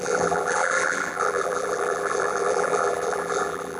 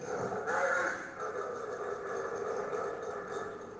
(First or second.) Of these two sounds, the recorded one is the second